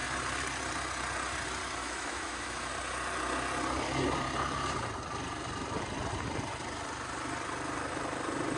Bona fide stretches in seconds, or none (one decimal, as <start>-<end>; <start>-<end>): 0.0-1.8; 2.7-8.6